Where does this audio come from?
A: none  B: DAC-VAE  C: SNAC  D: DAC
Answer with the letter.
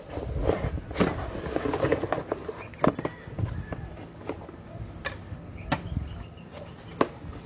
A